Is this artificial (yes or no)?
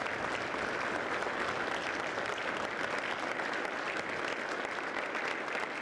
no